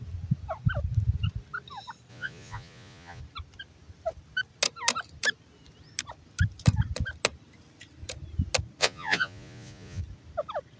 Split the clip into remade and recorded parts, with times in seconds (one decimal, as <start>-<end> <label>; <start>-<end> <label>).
0.0-2.1 recorded; 2.1-3.2 remade; 3.2-8.8 recorded; 8.8-10.0 remade; 10.0-10.8 recorded